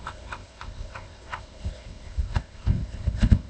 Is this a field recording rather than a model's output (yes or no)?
no